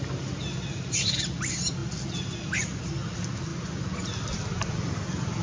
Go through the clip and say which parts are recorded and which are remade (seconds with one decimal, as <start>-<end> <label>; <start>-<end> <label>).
0.0-5.4 recorded